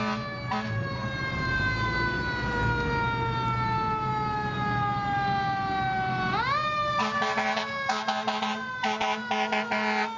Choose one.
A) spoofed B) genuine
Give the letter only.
B